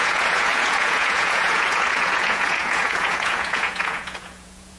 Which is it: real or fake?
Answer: fake